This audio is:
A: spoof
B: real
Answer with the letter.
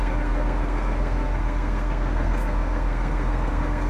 A